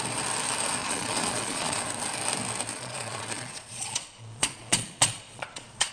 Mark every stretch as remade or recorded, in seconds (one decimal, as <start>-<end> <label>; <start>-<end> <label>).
0.0-0.8 recorded; 0.8-1.8 remade; 1.8-2.7 recorded; 2.7-5.9 remade